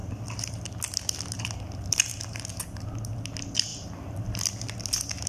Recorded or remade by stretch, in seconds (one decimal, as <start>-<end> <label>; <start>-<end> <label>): 0.0-5.3 recorded